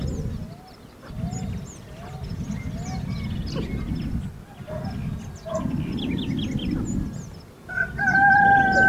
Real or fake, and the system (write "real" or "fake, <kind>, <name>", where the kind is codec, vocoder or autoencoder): real